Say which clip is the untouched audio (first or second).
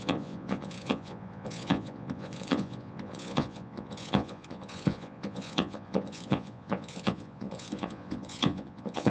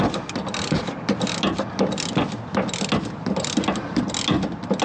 second